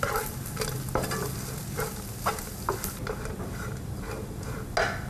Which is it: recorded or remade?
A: recorded